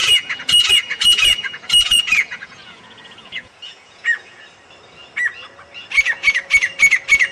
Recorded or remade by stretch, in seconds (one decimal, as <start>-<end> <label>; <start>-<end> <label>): 0.0-4.4 remade; 4.4-7.3 recorded